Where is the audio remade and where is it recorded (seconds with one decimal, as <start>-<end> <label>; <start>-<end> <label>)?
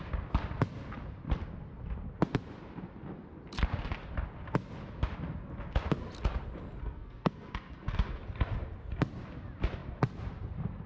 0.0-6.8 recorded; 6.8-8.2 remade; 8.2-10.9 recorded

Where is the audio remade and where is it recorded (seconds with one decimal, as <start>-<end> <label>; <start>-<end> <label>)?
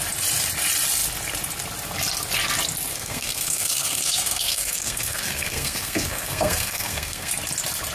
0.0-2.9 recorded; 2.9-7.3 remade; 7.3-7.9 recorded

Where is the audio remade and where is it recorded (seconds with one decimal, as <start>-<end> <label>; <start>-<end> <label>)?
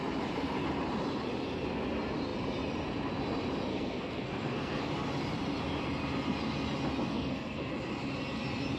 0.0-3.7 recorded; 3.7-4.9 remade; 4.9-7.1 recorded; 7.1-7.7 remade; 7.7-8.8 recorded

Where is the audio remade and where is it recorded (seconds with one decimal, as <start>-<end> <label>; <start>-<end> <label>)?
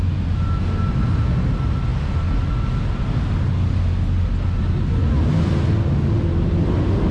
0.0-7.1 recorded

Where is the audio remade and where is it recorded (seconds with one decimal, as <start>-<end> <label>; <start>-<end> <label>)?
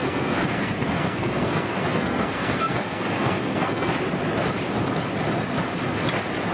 0.0-3.9 remade; 3.9-6.5 recorded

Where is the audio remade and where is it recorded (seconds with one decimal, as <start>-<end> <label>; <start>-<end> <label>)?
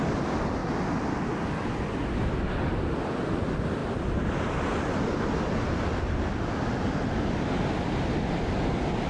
0.0-9.1 recorded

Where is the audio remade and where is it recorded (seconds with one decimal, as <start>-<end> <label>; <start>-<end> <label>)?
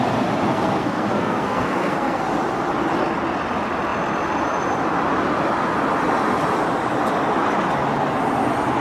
0.0-0.5 recorded; 0.5-2.2 remade; 2.2-8.8 recorded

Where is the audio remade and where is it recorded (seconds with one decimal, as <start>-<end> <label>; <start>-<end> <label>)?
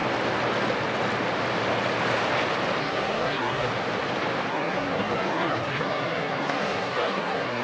0.0-2.8 recorded; 2.8-3.7 remade; 3.7-4.5 recorded; 4.5-7.6 remade